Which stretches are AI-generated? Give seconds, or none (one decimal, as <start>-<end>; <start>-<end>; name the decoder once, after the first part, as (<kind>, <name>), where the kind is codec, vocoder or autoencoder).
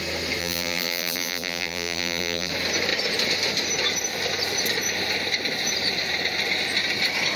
0.4-2.5 (vocoder, BigVGAN v2)